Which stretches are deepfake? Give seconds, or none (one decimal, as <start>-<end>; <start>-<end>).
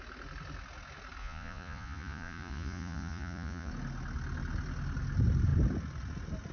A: 1.2-3.7